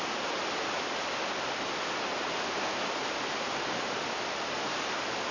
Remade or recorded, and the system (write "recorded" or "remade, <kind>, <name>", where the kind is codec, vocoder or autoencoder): recorded